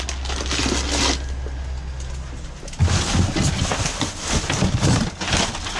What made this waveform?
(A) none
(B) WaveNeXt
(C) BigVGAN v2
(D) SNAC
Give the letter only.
A